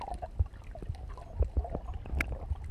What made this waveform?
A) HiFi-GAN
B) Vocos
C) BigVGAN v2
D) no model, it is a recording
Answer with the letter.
D